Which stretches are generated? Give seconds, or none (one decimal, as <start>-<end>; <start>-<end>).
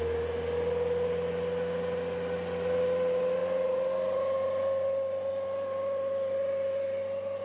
none